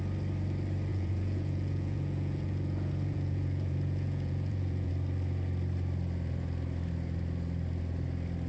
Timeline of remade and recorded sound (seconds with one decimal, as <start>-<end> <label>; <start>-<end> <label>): 0.0-0.9 recorded; 0.9-4.9 remade; 4.9-8.5 recorded